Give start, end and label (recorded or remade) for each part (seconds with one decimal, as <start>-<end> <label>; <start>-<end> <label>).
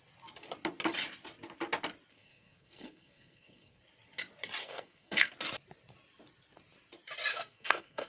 0.0-2.1 recorded; 2.1-3.8 remade; 3.8-4.6 recorded; 4.6-5.3 remade; 5.3-7.3 recorded; 7.3-8.1 remade